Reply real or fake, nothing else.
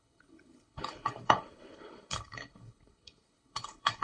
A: fake